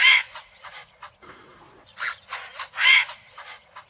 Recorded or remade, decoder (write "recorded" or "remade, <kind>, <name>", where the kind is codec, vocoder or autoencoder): remade, vocoder, Vocos